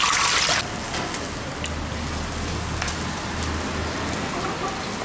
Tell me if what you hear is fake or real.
real